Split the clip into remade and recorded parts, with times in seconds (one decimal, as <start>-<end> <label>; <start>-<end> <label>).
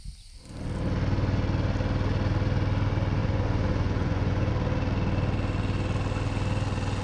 0.0-3.2 recorded; 3.2-4.5 remade; 4.5-7.0 recorded